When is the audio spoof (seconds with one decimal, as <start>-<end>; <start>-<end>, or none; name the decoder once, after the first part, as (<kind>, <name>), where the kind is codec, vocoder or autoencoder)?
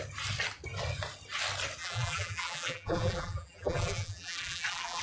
1.8-5.0 (vocoder, BigVGAN v2)